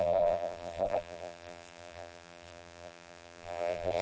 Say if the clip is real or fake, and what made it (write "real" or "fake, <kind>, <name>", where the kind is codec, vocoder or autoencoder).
fake, vocoder, BigVGAN v2